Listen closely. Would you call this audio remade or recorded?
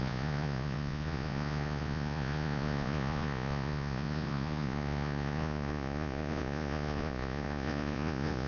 remade